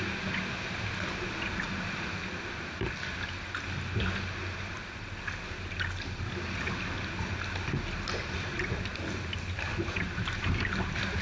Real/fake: real